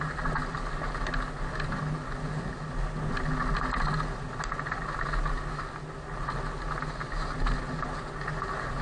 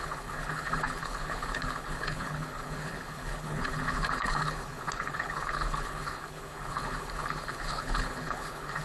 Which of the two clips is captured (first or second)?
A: first